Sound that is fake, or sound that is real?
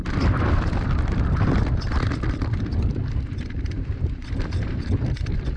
fake